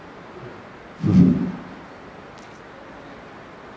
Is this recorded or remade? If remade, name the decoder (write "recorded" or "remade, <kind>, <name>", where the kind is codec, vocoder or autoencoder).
recorded